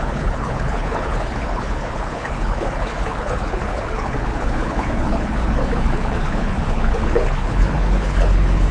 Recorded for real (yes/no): no